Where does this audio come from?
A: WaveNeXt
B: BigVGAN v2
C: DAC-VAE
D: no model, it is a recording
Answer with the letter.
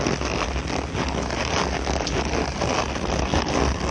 D